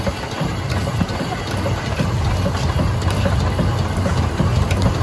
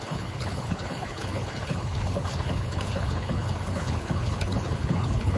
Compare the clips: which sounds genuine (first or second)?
first